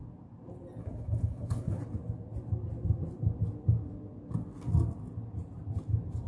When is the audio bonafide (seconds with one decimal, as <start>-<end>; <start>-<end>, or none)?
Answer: 0.0-0.8; 1.8-6.3